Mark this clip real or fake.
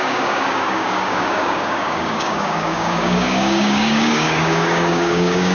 fake